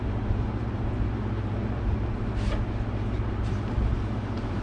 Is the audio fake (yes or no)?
yes